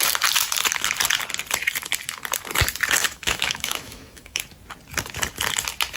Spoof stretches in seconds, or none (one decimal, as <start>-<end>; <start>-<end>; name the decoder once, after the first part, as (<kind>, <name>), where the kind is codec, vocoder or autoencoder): 3.0-4.4 (autoencoder, DAC-VAE)